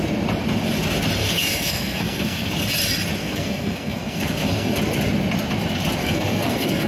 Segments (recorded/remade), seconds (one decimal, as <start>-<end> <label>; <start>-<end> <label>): 0.0-1.2 recorded; 1.2-2.5 remade; 2.5-3.2 recorded; 3.2-4.8 remade; 4.8-6.0 recorded; 6.0-6.9 remade